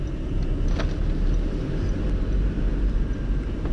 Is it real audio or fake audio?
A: real